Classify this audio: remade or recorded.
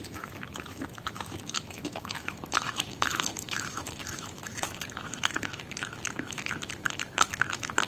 remade